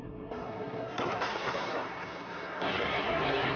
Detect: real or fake fake